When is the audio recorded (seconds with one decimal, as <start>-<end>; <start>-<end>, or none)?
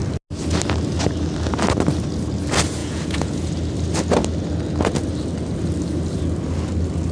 0.0-2.8; 3.5-7.1